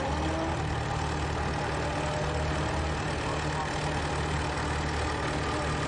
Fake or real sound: real